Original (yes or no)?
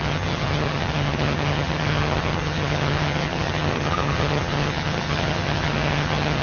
no